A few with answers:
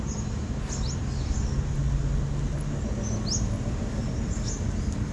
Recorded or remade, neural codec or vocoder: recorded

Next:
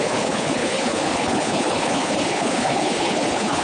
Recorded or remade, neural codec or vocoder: remade, codec, HILCodec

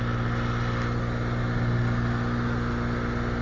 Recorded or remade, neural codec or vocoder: recorded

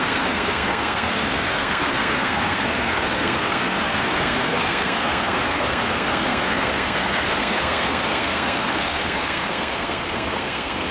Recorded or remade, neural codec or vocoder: remade, codec, SNAC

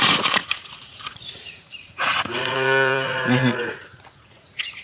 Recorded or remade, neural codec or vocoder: remade, vocoder, Vocos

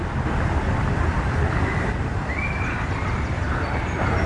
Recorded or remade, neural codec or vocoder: remade, vocoder, BigVGAN v2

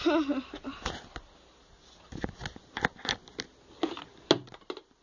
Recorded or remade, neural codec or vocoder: recorded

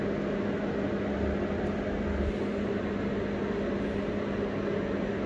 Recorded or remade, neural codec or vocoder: recorded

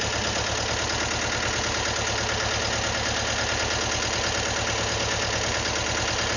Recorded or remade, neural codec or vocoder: recorded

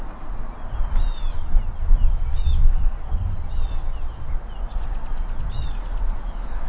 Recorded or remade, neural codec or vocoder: recorded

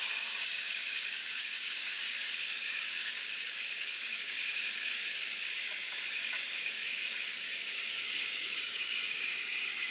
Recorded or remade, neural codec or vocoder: remade, codec, DAC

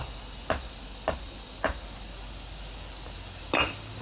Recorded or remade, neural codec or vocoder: recorded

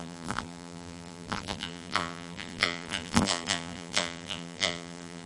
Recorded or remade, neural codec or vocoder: remade, vocoder, BigVGAN v2